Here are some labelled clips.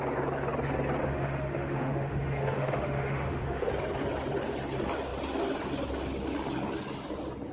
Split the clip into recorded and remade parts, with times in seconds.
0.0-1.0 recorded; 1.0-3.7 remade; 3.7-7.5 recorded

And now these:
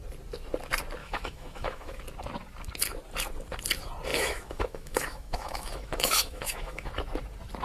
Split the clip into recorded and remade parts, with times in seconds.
0.0-1.0 recorded; 1.0-2.0 remade; 2.0-4.1 recorded; 4.1-6.9 remade; 6.9-7.6 recorded

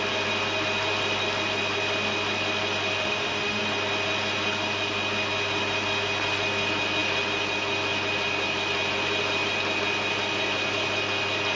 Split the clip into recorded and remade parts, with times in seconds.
0.0-3.0 recorded; 3.0-3.6 remade; 3.6-11.6 recorded

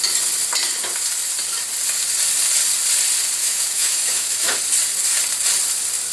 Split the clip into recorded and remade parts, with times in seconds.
0.0-3.4 recorded; 3.4-4.6 remade; 4.6-6.1 recorded

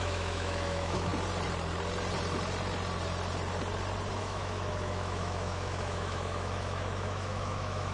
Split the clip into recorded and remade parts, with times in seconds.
0.0-1.1 remade; 1.1-4.2 recorded; 4.2-7.9 remade

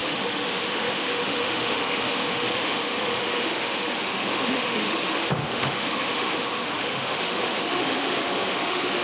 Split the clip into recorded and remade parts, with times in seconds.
0.0-9.0 remade

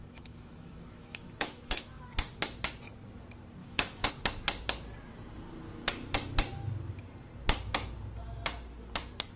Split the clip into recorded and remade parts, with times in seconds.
0.0-2.1 remade; 2.1-3.6 recorded; 3.6-4.1 remade; 4.1-9.4 recorded

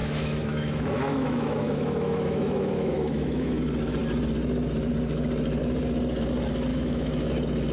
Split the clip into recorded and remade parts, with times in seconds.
0.0-3.6 remade; 3.6-6.7 recorded; 6.7-7.3 remade; 7.3-7.7 recorded